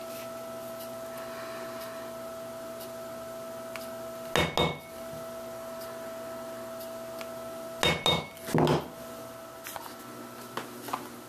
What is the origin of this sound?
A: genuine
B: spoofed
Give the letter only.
A